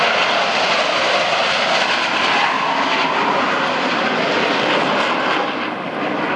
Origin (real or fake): real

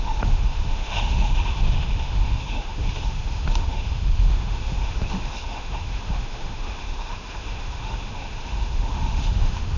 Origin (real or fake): fake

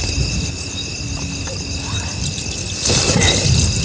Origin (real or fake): fake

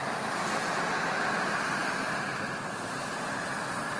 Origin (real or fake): real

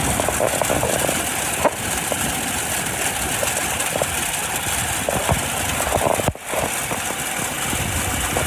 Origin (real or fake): real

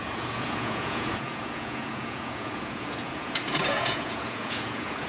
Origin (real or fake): fake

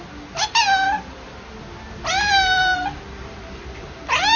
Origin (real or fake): real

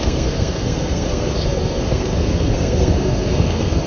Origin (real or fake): fake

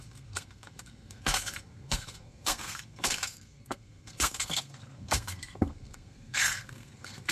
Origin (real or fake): fake